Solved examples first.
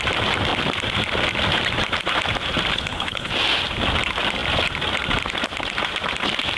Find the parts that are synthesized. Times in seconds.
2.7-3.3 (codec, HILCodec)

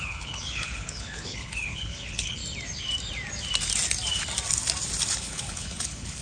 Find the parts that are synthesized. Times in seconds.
0.0-2.4 (codec, HILCodec); 5.1-6.2

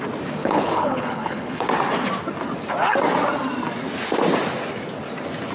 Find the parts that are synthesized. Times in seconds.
0.4-1.7 (codec, HILCodec)